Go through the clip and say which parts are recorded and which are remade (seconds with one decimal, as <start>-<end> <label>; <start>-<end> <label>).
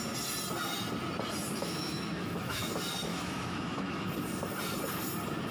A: 0.0-1.6 recorded; 1.6-2.7 remade; 2.7-3.1 recorded; 3.1-4.1 remade; 4.1-5.5 recorded